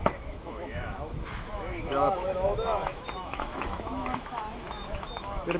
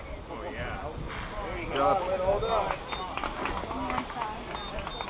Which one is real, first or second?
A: second